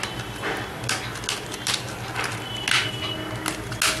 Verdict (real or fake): real